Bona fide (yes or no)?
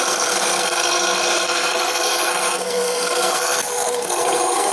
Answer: no